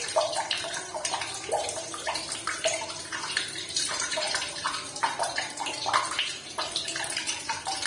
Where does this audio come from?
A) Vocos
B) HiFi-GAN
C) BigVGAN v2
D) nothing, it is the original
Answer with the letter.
C